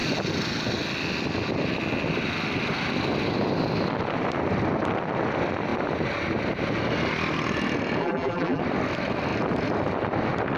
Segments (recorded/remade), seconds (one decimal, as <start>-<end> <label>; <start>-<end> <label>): 0.0-8.0 recorded; 8.0-8.6 remade; 8.6-10.6 recorded